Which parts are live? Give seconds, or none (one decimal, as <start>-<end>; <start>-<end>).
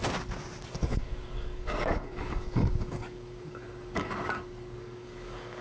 0.0-0.7